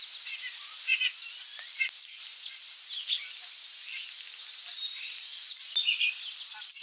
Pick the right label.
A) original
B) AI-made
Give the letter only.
A